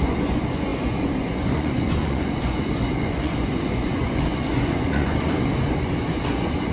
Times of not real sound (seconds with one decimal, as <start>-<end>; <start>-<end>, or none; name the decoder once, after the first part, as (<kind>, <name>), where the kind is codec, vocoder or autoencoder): 0.0-6.7 (vocoder, Vocos)